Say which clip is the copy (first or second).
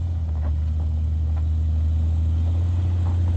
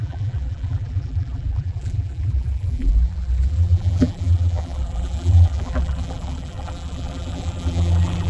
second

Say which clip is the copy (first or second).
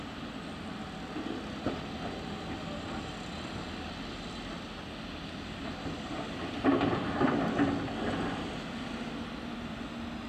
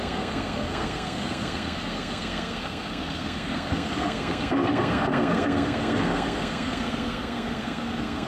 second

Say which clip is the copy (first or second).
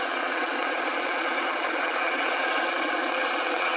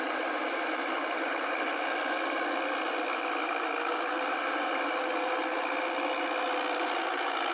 first